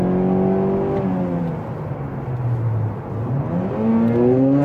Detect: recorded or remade recorded